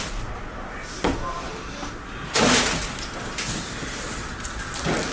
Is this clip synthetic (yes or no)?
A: no